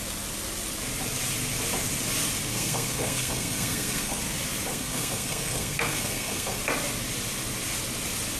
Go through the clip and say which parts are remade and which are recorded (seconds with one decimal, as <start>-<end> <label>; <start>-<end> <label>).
0.0-2.5 recorded; 2.5-4.2 remade; 4.2-4.7 recorded; 4.7-6.6 remade; 6.6-8.4 recorded